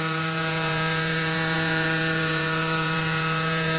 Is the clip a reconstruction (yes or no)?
yes